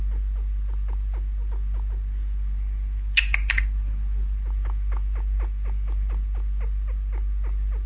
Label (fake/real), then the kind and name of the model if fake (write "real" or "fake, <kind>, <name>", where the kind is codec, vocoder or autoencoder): real